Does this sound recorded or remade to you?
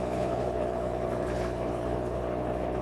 remade